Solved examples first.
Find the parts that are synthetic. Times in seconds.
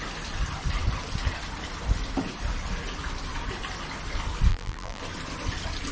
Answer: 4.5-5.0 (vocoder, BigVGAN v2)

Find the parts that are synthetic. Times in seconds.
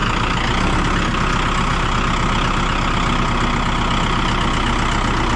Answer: none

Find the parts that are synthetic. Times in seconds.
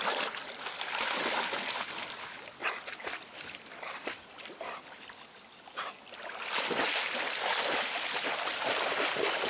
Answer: 2.6-5.9 (vocoder, BigVGAN v2)